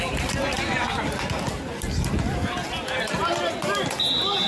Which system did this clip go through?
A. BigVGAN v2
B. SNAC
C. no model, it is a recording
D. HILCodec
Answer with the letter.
C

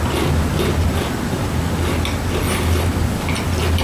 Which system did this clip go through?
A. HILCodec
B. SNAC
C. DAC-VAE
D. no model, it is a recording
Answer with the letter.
D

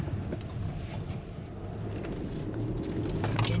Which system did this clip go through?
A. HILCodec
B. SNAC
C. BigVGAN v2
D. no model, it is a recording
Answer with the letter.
D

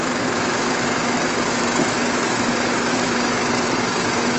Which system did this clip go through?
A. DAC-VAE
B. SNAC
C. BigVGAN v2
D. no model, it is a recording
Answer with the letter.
A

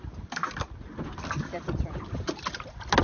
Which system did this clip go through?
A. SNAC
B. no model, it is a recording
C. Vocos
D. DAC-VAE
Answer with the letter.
B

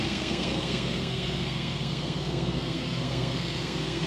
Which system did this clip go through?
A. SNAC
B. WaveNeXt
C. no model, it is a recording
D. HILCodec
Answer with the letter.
A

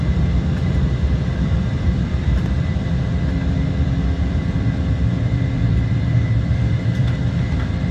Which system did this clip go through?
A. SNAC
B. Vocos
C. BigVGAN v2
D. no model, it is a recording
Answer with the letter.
C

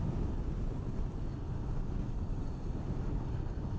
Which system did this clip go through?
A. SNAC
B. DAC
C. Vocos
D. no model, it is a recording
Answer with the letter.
D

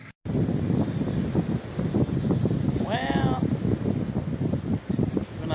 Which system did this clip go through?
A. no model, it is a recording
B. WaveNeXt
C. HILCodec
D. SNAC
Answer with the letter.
A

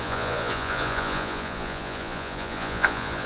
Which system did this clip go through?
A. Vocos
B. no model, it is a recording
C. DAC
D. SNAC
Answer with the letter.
A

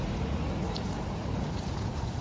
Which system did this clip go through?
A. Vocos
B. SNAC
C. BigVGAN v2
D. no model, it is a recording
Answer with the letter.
A